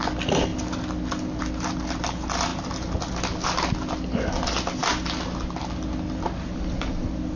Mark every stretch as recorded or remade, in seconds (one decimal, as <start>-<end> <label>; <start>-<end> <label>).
0.0-7.4 recorded